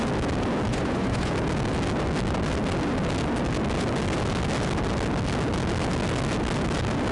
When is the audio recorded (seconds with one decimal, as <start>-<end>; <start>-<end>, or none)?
0.0-0.7; 1.3-7.1